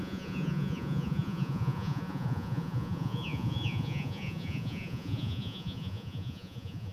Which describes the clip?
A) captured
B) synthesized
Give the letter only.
B